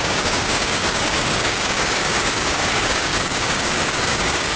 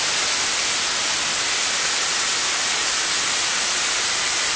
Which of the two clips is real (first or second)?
second